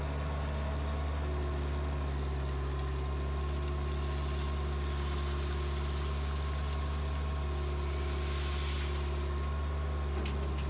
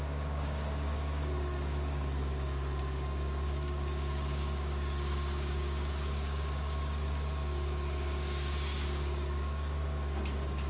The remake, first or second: second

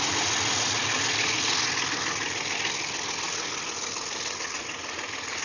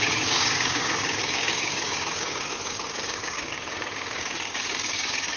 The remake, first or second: second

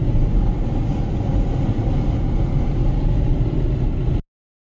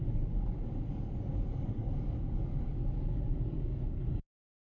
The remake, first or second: second